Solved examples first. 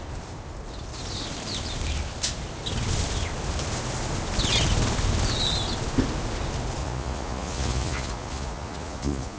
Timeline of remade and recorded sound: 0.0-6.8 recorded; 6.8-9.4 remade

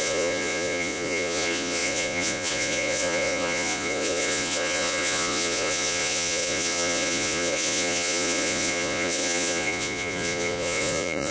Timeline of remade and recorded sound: 0.0-11.3 remade

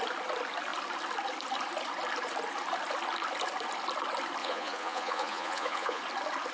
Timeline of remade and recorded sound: 0.0-4.4 recorded; 4.4-6.0 remade; 6.0-6.5 recorded

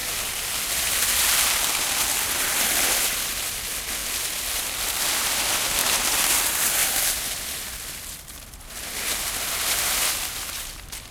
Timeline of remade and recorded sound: 0.0-2.0 remade; 2.0-4.0 recorded; 4.0-5.0 remade; 5.0-5.8 recorded; 5.8-6.3 remade; 6.3-11.1 recorded

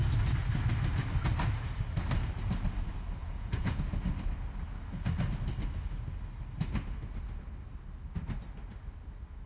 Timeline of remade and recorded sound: 0.0-3.2 recorded; 3.2-3.8 remade; 3.8-9.5 recorded

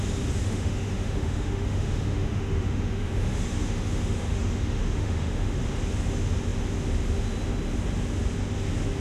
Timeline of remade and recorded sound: 0.0-0.4 recorded; 0.4-5.6 remade; 5.6-9.0 recorded